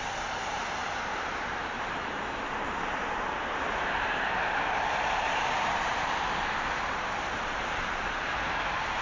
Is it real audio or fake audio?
fake